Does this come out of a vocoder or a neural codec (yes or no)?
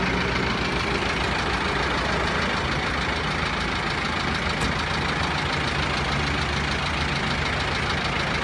no